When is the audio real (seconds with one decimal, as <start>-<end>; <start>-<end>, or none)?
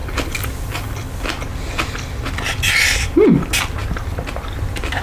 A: 0.0-5.0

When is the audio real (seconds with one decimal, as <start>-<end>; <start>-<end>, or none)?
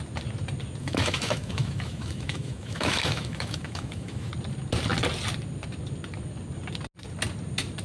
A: 0.0-0.8; 4.3-7.8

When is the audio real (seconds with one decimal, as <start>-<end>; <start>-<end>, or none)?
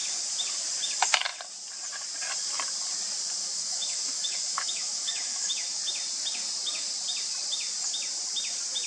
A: 0.0-3.4; 5.8-8.9